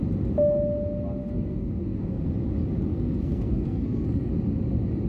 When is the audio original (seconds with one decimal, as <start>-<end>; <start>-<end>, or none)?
0.0-1.2; 2.3-2.9; 4.3-5.1